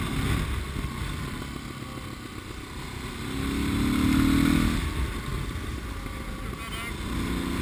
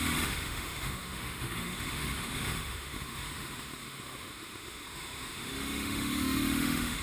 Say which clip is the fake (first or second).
second